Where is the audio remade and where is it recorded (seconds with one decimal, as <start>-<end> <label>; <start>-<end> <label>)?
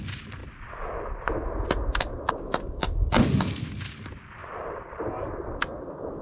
0.0-4.4 recorded; 4.4-5.6 remade; 5.6-6.2 recorded